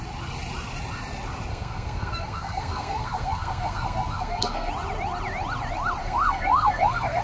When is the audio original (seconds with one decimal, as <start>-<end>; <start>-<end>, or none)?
0.0-1.5; 4.7-6.0